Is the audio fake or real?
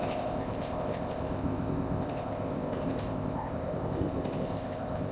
fake